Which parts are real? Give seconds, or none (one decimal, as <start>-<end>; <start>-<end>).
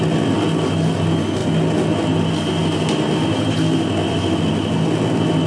0.0-5.5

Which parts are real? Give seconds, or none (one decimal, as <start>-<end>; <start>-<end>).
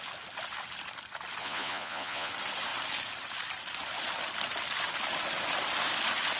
0.0-1.4; 2.3-6.4